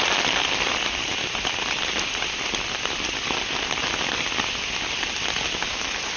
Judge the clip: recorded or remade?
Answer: recorded